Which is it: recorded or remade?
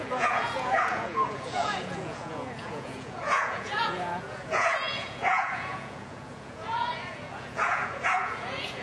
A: remade